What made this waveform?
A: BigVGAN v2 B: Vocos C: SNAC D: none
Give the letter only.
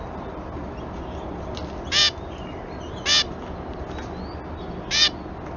D